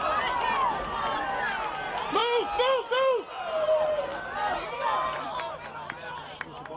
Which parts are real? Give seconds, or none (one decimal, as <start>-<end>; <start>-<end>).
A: 0.0-4.1; 5.4-6.8